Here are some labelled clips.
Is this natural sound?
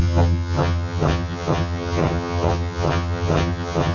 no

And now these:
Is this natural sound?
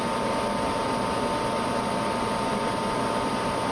yes